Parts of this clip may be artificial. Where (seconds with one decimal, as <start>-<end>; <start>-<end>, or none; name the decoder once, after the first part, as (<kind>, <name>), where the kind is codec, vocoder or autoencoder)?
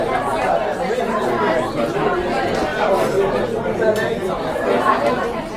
2.7-5.1 (vocoder, BigVGAN v2)